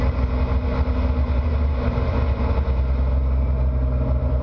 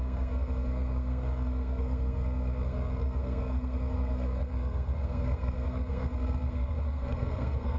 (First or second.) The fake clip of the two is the second